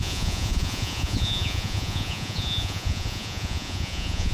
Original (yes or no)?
no